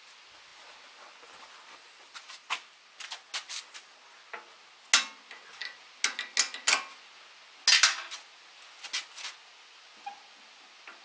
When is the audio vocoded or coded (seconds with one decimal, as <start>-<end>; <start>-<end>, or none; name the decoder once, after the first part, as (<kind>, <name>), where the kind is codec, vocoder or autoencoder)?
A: none